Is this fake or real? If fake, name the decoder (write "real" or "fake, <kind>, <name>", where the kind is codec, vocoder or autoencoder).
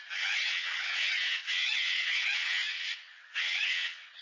fake, vocoder, WaveNeXt